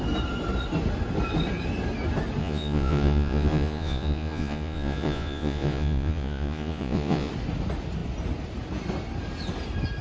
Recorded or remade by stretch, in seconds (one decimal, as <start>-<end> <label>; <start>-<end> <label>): 0.0-2.4 recorded; 2.4-7.3 remade; 7.3-10.0 recorded